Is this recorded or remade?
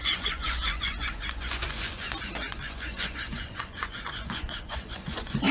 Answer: remade